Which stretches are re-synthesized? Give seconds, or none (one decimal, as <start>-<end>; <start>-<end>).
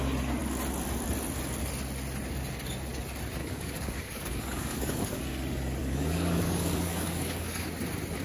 3.4-5.2; 5.8-7.7